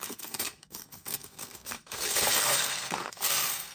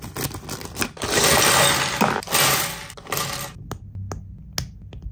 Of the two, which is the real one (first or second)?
second